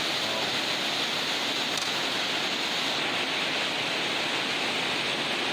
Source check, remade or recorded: recorded